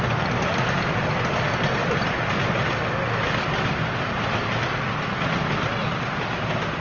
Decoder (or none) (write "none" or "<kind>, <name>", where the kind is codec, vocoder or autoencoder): none